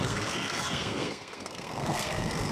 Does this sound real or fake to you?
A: fake